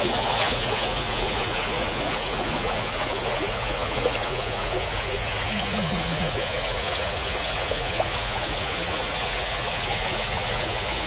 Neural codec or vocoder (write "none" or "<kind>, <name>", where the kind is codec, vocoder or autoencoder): vocoder, Vocos